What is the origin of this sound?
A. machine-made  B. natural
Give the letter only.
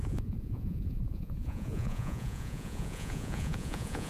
A